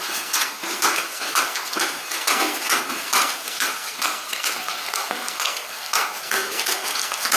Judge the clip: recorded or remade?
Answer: remade